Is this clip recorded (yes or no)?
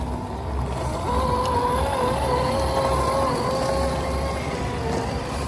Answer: yes